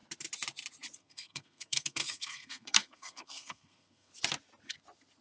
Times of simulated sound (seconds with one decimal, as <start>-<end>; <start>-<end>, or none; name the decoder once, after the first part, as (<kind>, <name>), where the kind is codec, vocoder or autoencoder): 1.0-4.1 (codec, SNAC)